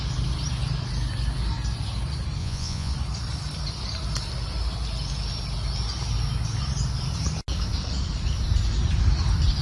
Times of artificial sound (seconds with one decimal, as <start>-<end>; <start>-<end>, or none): 2.4-2.9